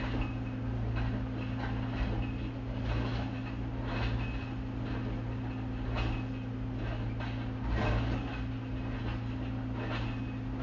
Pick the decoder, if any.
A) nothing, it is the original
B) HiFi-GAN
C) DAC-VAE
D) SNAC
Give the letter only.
A